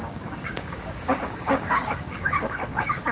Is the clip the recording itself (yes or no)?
no